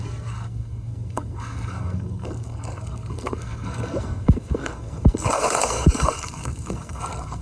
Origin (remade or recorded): remade